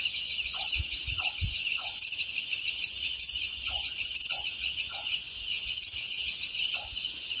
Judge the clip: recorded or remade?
remade